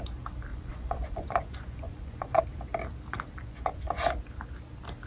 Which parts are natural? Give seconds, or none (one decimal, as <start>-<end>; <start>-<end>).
0.0-0.5; 2.4-3.4; 4.0-5.1